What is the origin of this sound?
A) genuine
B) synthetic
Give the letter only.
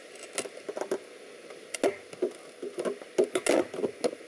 A